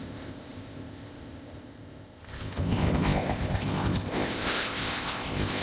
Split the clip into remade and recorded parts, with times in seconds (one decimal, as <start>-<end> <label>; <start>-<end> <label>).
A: 0.0-5.6 remade